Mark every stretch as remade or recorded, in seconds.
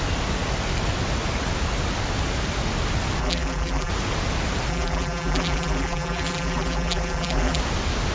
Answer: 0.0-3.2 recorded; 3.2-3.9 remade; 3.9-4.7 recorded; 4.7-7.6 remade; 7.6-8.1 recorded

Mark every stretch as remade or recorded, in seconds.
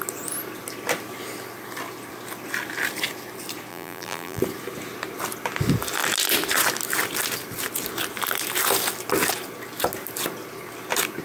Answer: 0.0-3.7 recorded; 3.7-4.4 remade; 4.4-11.2 recorded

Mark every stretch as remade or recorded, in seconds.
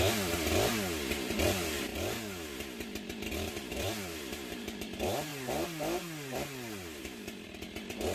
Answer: 0.0-1.9 remade; 1.9-3.5 recorded; 3.5-5.3 remade; 5.3-7.0 recorded; 7.0-8.1 remade